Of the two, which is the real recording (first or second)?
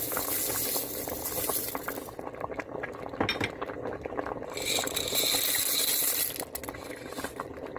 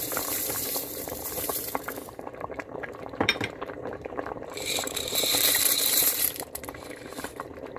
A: first